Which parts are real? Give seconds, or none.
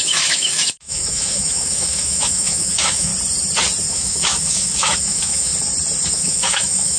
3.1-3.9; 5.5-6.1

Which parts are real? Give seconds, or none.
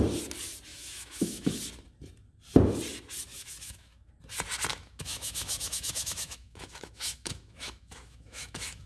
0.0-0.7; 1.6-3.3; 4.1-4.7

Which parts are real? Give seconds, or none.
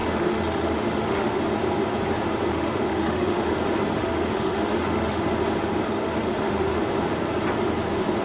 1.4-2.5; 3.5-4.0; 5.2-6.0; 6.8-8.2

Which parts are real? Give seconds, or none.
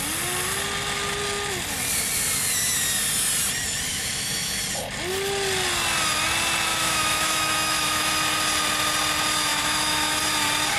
0.0-3.9; 4.6-6.7; 8.1-9.5; 10.2-10.8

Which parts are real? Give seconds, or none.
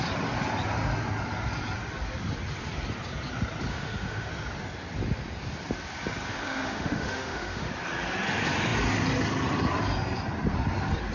0.0-3.7; 4.3-6.3; 7.7-11.1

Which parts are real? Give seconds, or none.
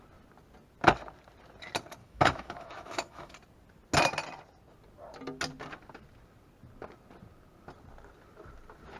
0.0-2.0; 3.3-9.0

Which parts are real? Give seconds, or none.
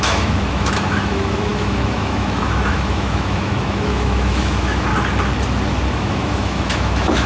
4.9-5.9